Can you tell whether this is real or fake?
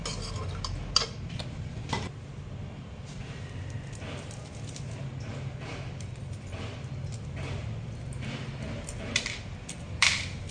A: real